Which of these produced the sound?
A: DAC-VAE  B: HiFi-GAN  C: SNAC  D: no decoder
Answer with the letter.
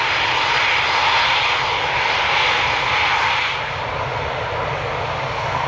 D